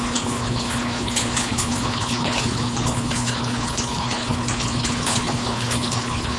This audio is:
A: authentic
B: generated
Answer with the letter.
B